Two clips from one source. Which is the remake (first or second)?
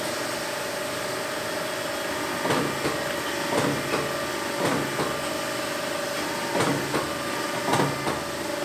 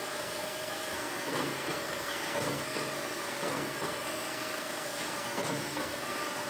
second